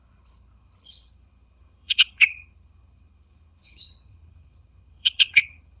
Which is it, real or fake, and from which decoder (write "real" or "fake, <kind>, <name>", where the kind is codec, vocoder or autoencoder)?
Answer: fake, codec, HILCodec